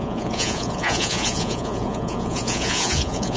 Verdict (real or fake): fake